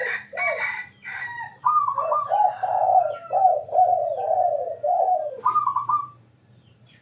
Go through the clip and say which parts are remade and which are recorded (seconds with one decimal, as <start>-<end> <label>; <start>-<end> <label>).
0.0-2.9 remade; 2.9-6.3 recorded; 6.3-7.0 remade